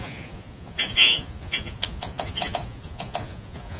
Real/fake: fake